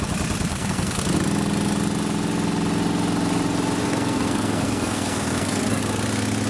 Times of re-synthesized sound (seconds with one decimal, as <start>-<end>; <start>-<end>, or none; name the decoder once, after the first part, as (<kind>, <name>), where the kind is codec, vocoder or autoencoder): 0.5-1.0 (codec, SNAC); 3.8-5.8